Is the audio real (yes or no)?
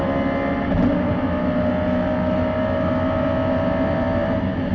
yes